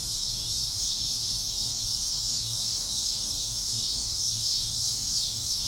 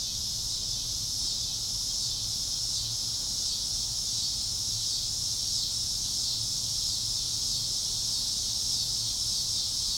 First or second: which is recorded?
second